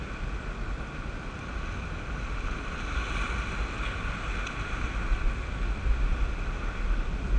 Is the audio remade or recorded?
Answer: recorded